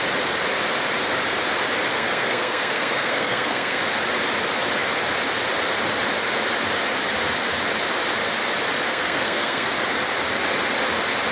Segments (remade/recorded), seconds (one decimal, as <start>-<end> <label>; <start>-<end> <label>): 0.0-1.9 recorded; 1.9-3.8 remade; 3.8-8.9 recorded; 8.9-9.7 remade; 9.7-11.3 recorded